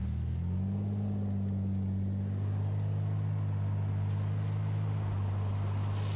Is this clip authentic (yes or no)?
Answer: yes